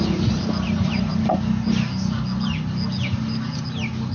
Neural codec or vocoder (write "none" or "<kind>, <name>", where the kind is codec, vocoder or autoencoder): none